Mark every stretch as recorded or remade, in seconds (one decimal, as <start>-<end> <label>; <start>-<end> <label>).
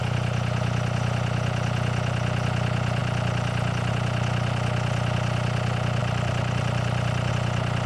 0.0-6.0 recorded; 6.0-7.3 remade; 7.3-7.9 recorded